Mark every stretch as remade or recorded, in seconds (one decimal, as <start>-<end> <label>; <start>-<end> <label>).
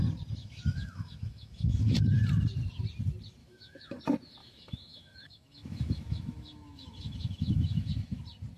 0.0-0.4 recorded; 0.4-1.8 remade; 1.8-3.4 recorded; 3.4-4.0 remade; 4.0-4.4 recorded; 4.4-8.2 remade; 8.2-8.6 recorded